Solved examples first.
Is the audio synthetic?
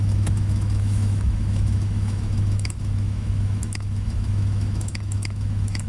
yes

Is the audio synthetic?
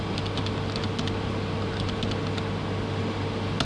no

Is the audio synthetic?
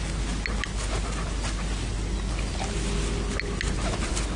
no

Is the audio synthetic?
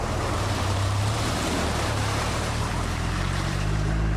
yes